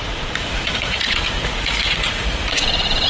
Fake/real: fake